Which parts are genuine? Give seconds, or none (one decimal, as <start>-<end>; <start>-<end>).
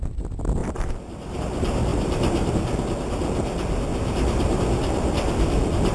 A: 0.0-0.6; 1.4-1.9; 2.6-3.9; 4.6-5.9